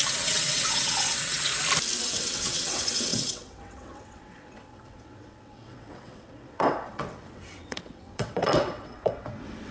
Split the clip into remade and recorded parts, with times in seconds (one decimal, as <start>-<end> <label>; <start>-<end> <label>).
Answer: 0.0-1.5 remade; 1.5-2.0 recorded; 2.0-9.7 remade